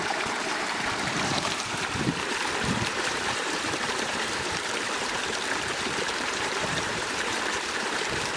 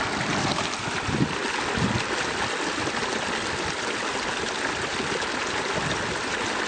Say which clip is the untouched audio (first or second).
second